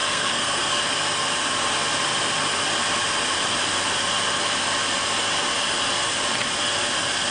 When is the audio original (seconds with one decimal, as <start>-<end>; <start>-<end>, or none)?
0.8-7.3